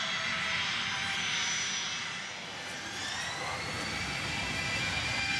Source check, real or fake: real